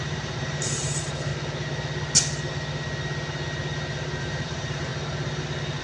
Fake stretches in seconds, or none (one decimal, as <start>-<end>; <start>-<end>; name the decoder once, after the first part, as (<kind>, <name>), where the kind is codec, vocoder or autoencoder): 0.0-1.3 (vocoder, BigVGAN v2); 4.2-4.9